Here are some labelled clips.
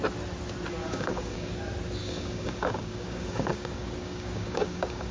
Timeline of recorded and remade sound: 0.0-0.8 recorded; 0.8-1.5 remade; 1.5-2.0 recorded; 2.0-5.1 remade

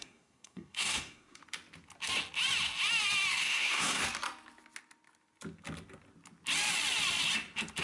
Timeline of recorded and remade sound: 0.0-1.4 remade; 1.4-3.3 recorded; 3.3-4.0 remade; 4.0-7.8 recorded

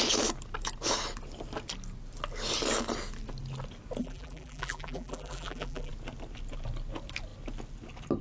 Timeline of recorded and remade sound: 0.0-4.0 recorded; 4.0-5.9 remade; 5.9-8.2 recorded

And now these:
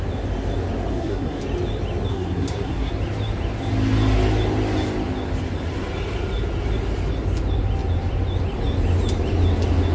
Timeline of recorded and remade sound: 0.0-0.9 recorded; 0.9-1.4 remade; 1.4-2.1 recorded; 2.1-2.9 remade; 2.9-9.9 recorded

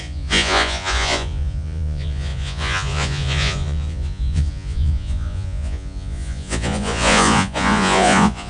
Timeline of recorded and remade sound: 0.0-8.5 remade